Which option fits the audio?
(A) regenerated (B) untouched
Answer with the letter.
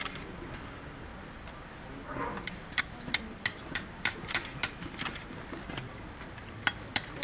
B